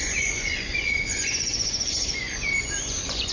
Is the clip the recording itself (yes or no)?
no